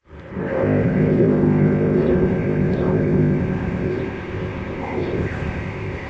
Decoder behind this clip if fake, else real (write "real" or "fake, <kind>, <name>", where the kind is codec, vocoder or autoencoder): fake, codec, ZipCodec